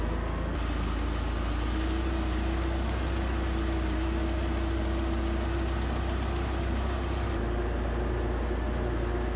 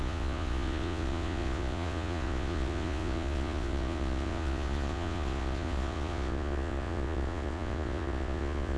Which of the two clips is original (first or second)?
first